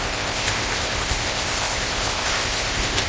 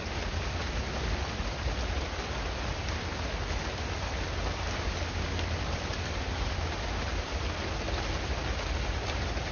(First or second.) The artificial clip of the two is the first